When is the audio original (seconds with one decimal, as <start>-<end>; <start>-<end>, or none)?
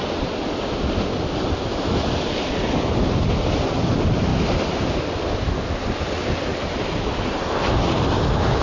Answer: 0.0-4.3; 5.0-6.5; 7.1-8.6